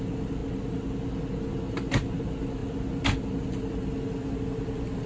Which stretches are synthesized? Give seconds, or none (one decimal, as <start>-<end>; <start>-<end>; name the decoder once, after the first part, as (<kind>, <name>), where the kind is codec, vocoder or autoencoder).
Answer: none